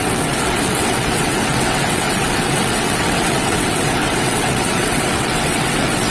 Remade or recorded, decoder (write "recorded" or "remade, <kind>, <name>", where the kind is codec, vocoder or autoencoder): remade, vocoder, WaveNeXt